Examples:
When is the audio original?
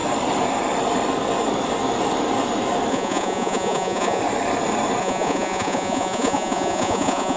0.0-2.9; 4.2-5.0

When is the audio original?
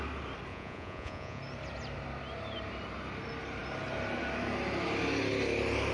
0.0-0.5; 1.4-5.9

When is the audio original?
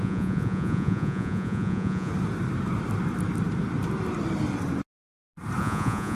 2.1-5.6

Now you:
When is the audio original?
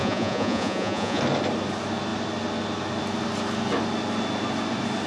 1.2-5.1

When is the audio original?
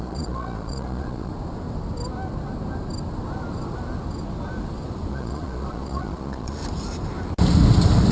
1.3-5.1; 6.6-8.1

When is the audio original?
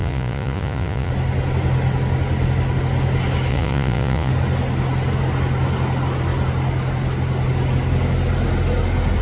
1.1-3.5; 4.3-9.2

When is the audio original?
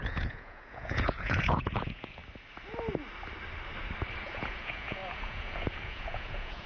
2.2-4.2